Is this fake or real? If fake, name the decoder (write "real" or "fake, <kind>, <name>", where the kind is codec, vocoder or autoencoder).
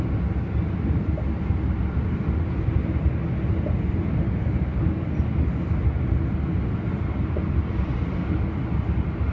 real